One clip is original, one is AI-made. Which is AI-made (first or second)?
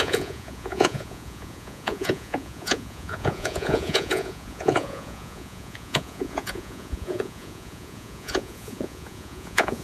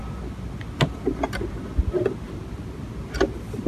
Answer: first